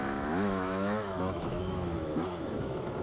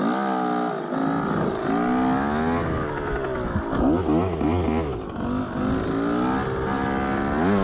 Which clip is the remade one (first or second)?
first